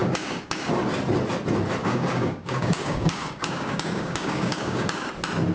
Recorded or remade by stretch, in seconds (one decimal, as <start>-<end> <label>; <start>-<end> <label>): 0.0-0.7 remade; 0.7-1.8 recorded; 1.8-5.1 remade; 5.1-5.5 recorded